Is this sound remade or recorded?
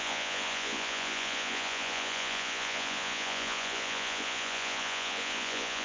remade